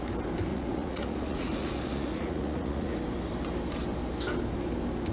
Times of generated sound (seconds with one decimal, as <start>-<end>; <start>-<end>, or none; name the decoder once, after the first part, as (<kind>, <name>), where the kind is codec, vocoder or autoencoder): 0.5-2.9 (vocoder, Vocos)